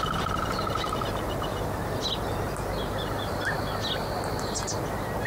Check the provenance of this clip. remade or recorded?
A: recorded